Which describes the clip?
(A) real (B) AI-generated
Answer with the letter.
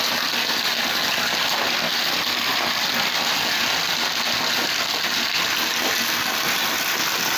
A